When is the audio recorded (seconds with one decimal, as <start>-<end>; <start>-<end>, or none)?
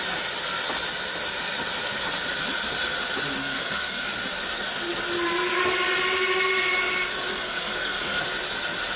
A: 0.0-3.4; 4.1-7.3; 8.2-9.0